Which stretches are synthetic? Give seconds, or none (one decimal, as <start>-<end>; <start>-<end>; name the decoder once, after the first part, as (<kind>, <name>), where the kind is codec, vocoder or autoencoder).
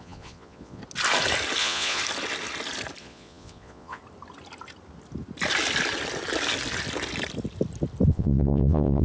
0.0-0.8 (vocoder, Vocos); 1.6-2.0; 3.0-4.0; 8.1-9.0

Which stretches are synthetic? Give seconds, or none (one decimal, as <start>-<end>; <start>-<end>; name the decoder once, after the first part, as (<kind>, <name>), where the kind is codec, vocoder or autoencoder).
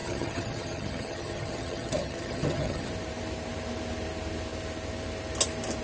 0.0-2.9 (vocoder, HiFi-GAN)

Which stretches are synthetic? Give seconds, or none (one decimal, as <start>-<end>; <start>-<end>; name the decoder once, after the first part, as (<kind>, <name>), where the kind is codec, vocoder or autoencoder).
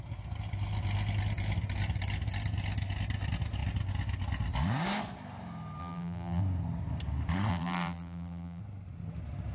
5.8-6.4 (vocoder, BigVGAN v2); 7.5-8.6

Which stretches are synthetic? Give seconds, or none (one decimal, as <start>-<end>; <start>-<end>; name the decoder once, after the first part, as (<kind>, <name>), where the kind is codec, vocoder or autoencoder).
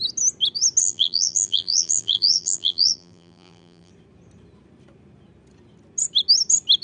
0.8-3.9 (vocoder, BigVGAN v2)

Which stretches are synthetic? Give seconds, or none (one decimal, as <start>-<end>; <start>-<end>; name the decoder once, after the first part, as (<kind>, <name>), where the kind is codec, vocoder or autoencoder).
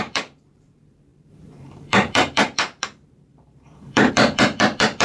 0.0-5.0 (vocoder, BigVGAN v2)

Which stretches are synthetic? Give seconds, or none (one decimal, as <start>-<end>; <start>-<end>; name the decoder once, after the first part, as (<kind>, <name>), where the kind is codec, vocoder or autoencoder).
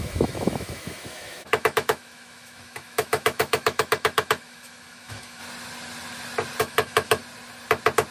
0.0-5.4 (autoencoder, DAC-VAE); 6.6-7.2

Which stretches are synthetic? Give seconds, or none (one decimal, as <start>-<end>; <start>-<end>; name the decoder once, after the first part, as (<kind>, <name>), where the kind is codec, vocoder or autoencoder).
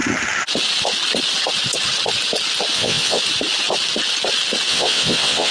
2.7-3.2 (vocoder, WaveNeXt); 4.7-5.5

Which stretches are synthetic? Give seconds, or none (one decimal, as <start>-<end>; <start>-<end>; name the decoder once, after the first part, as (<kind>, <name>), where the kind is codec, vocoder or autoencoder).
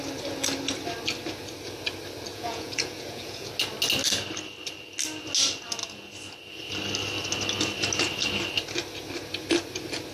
2.3-3.5 (vocoder, Vocos)